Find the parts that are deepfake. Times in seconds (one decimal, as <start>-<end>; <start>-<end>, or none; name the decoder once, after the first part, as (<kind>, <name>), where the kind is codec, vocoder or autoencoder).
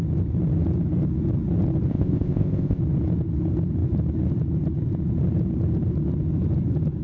1.9-2.8 (codec, ZipCodec)